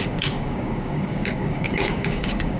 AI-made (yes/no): yes